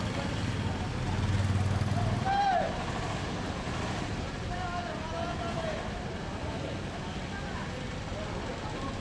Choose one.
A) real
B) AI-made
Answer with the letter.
A